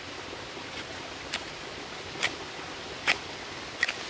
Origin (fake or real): real